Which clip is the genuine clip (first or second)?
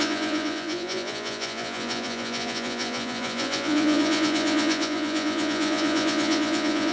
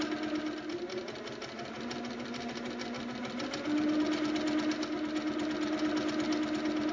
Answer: second